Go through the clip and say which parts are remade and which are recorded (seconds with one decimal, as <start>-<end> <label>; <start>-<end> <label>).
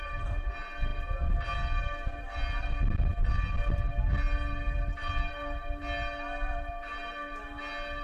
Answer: 0.0-8.0 recorded